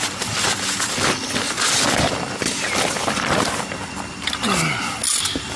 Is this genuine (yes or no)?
yes